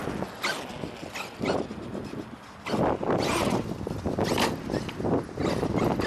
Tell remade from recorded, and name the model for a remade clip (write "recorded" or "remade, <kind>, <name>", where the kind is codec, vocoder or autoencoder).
recorded